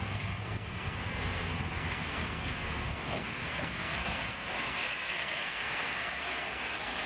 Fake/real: fake